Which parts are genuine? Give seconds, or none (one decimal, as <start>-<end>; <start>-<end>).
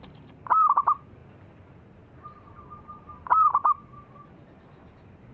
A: 0.0-5.3